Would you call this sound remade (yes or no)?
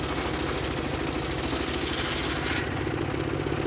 no